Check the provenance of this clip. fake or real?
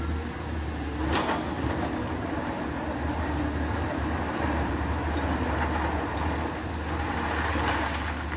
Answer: real